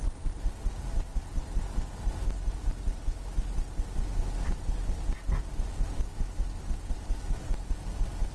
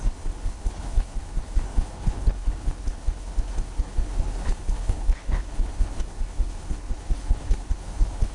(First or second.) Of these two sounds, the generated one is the second